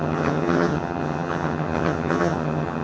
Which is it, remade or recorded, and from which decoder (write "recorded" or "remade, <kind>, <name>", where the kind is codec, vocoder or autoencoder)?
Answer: remade, vocoder, HiFi-GAN